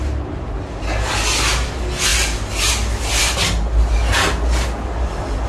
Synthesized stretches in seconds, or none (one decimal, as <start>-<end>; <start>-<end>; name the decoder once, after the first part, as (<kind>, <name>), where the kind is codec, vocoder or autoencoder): none